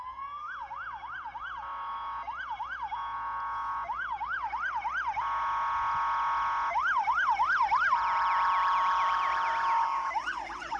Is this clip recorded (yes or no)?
yes